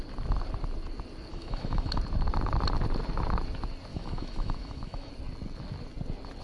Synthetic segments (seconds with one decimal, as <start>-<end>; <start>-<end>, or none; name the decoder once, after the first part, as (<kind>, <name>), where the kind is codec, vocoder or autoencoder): 1.3-2.0 (autoencoder, DAC-VAE); 3.9-5.1